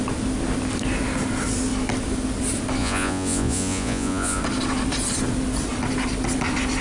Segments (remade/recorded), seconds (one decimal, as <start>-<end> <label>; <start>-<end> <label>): 0.0-2.8 recorded; 2.8-4.4 remade; 4.4-6.8 recorded